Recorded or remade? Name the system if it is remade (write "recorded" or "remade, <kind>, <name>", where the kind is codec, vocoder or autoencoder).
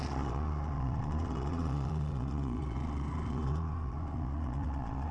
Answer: remade, vocoder, Vocos